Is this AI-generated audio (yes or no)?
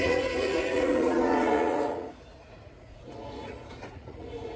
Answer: yes